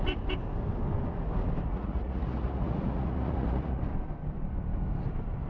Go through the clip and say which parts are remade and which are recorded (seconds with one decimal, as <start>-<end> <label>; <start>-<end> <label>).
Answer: 0.0-1.7 recorded; 1.7-3.8 remade; 3.8-5.5 recorded